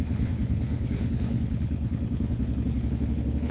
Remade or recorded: remade